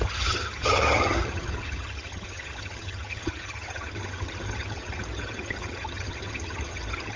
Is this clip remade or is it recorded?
remade